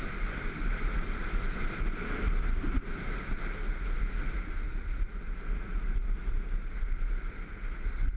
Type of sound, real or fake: real